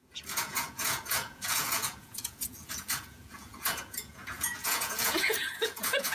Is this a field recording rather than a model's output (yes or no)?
no